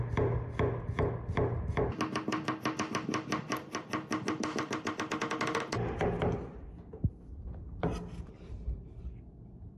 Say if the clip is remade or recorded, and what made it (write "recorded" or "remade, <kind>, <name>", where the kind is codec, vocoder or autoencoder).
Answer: recorded